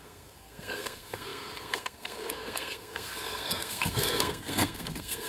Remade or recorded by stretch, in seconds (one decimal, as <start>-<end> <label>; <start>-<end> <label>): 0.0-5.3 remade